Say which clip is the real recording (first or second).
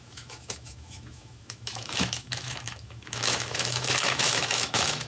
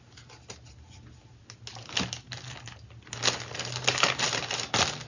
second